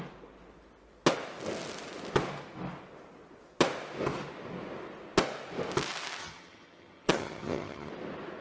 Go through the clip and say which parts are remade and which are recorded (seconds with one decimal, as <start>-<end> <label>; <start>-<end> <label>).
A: 0.0-6.2 recorded; 6.2-7.9 remade; 7.9-8.4 recorded